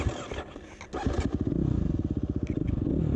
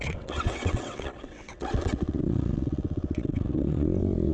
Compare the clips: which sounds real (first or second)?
first